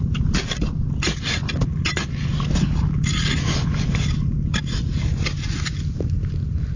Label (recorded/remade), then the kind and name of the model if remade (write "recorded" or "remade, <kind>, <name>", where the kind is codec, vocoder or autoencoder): recorded